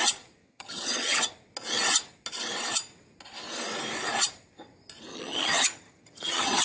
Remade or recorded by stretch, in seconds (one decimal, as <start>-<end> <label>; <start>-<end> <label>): 0.0-0.4 recorded; 0.4-1.2 remade; 1.2-5.1 recorded; 5.1-6.6 remade